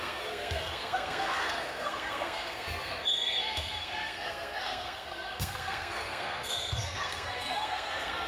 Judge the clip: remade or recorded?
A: remade